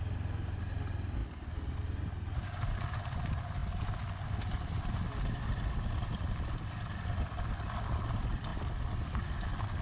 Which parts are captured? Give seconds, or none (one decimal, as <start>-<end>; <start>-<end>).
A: 0.0-9.8